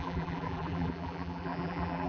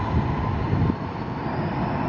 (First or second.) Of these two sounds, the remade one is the first